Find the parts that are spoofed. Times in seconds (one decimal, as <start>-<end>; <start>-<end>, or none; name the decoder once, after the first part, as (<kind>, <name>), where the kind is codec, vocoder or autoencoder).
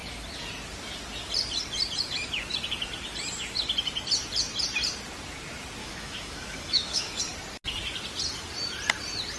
5.8-7.2 (autoencoder, DAC-VAE)